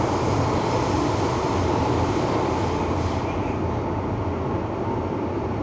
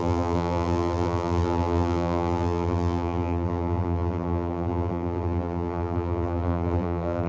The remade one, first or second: second